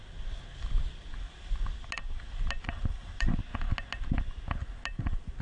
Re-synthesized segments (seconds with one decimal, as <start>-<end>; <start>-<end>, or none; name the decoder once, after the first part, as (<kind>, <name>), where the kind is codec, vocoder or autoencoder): none